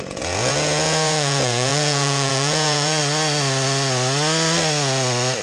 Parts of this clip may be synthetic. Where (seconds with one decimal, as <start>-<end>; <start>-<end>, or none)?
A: 0.0-3.0